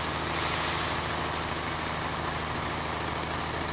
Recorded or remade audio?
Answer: recorded